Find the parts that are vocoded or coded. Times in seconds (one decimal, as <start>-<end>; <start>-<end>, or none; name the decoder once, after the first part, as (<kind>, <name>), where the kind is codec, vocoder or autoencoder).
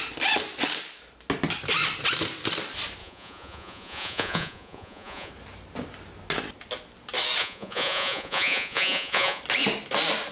3.0-5.3 (vocoder, Vocos); 7.4-9.4